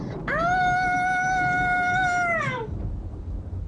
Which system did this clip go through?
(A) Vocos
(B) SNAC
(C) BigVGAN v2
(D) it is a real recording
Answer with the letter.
D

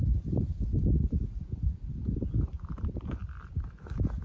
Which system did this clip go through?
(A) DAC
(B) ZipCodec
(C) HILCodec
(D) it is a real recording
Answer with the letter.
D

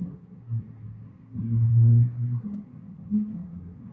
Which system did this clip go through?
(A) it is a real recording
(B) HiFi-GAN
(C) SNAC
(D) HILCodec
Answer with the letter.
C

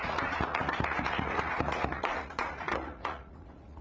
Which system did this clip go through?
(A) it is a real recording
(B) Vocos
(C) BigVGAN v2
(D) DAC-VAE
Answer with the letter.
B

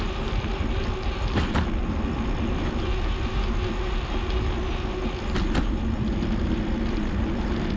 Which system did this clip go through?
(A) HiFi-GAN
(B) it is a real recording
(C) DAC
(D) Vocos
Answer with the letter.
B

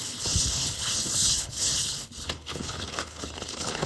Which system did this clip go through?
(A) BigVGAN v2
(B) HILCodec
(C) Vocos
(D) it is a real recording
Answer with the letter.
B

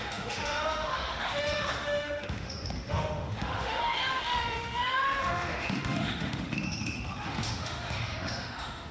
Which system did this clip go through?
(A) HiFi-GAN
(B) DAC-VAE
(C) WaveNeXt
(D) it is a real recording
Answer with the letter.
B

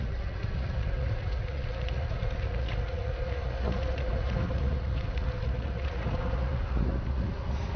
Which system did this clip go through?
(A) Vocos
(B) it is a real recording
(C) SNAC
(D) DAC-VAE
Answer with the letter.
A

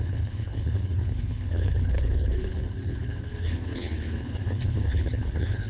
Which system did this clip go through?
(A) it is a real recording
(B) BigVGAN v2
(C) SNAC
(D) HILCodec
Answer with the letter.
D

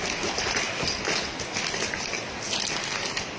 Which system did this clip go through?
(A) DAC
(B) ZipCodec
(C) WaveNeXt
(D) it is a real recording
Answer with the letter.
D